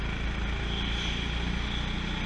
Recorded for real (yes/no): yes